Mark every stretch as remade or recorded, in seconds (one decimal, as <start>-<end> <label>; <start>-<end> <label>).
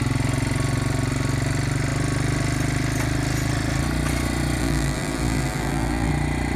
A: 0.0-4.6 recorded; 4.6-6.1 remade; 6.1-6.6 recorded